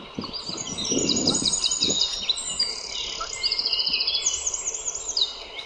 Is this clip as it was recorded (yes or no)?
yes